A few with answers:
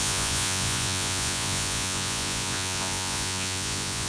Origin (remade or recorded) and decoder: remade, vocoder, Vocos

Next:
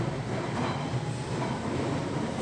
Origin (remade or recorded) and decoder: recorded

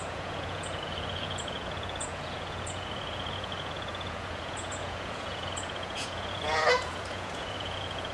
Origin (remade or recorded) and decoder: remade, vocoder, Vocos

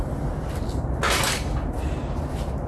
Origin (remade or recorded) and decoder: recorded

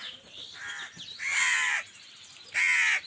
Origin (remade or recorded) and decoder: recorded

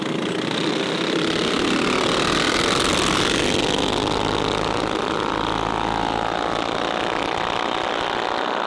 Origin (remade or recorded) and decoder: recorded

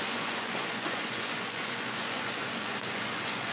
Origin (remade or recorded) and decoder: remade, vocoder, Vocos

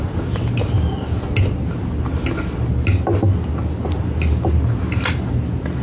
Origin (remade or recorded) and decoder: recorded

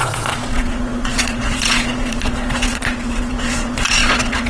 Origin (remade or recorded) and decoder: remade, vocoder, Vocos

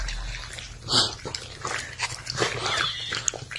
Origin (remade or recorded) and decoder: recorded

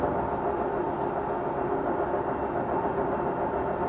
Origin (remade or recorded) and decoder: recorded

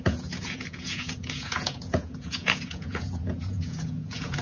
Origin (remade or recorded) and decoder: remade, vocoder, Vocos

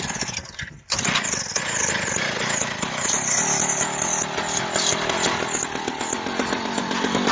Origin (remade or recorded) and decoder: recorded